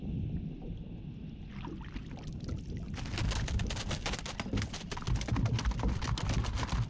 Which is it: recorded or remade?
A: recorded